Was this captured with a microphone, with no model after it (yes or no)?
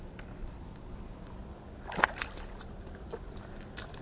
yes